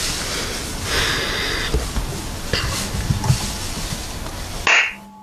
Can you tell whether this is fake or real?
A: real